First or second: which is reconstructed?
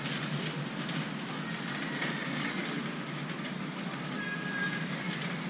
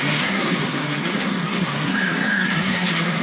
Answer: second